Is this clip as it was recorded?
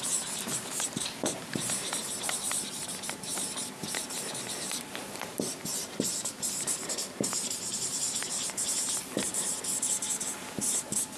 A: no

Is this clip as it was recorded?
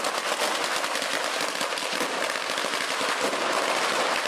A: yes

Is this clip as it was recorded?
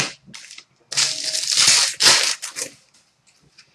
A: yes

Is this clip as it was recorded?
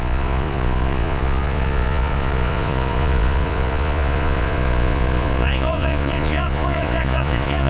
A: no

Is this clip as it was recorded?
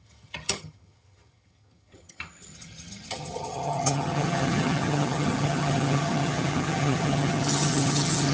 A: no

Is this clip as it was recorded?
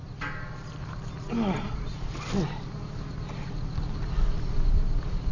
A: yes